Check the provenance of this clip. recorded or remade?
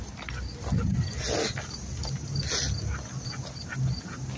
recorded